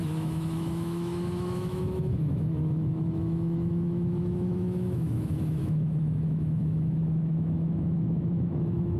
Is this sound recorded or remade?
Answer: remade